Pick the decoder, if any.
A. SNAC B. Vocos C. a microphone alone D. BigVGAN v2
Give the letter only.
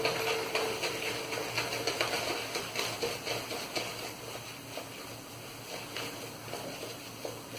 C